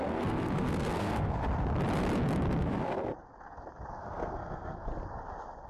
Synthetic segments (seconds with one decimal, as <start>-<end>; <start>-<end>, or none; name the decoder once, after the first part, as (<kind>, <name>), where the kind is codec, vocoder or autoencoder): 0.0-1.4 (codec, SNAC); 2.6-3.1; 3.9-4.9